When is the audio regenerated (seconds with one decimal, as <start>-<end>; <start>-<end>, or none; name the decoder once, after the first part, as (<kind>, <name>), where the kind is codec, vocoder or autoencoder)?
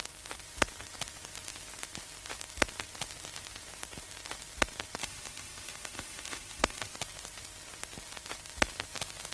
5.0-6.9 (autoencoder, DAC-VAE)